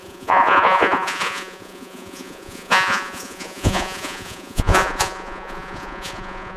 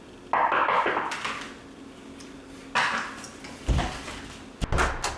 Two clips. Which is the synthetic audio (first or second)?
first